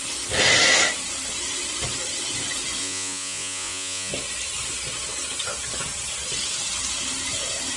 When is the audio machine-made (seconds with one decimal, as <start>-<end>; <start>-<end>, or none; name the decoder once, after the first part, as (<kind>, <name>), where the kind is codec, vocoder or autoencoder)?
2.8-4.1 (vocoder, Vocos)